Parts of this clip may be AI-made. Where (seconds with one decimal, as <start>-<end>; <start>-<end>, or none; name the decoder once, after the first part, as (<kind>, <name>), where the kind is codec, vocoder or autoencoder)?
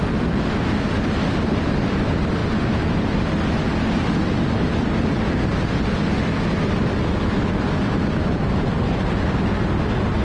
none